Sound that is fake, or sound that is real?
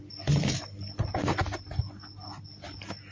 real